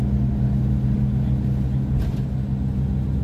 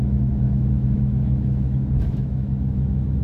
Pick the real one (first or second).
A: first